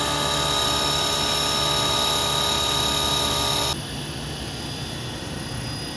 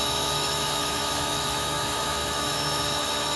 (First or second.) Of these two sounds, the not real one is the second